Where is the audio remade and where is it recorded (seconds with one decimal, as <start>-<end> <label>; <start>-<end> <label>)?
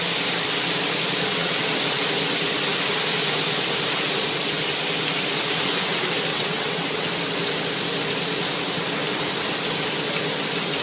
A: 0.0-1.3 recorded; 1.3-1.8 remade; 1.8-6.3 recorded; 6.3-7.1 remade; 7.1-10.8 recorded